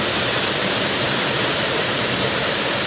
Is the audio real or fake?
fake